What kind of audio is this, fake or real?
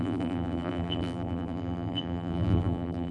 fake